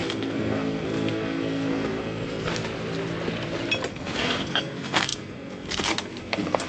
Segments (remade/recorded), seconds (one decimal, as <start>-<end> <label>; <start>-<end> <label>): 0.0-2.5 remade; 2.5-3.9 recorded; 3.9-6.7 remade